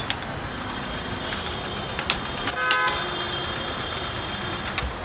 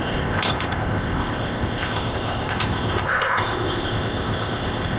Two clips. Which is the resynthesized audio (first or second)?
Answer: second